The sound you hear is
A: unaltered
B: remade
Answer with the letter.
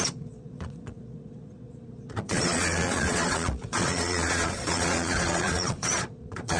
B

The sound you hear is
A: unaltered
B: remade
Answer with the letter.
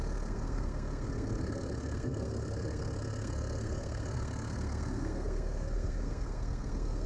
B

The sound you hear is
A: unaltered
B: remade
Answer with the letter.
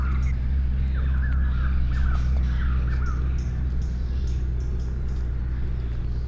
A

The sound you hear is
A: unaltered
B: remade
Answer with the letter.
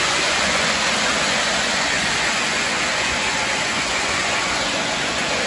B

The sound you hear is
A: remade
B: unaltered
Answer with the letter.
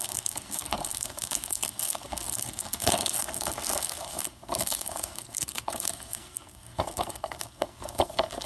A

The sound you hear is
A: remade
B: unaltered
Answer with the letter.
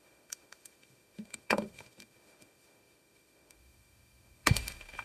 A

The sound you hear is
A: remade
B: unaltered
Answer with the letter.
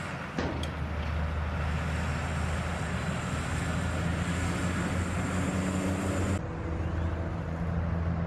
B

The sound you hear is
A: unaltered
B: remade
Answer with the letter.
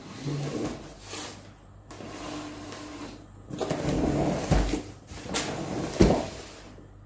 A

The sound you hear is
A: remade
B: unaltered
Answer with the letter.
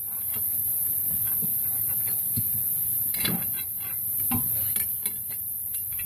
A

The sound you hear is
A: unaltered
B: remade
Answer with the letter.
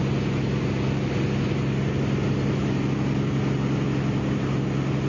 A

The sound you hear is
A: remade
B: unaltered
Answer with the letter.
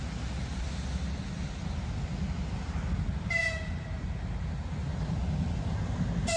B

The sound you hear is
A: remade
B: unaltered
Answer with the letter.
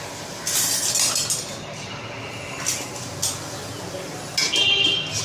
B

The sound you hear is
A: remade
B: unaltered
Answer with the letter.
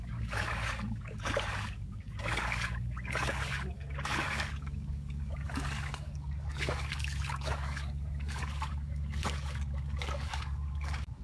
A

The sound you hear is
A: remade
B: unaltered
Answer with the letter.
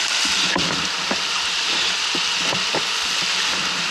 B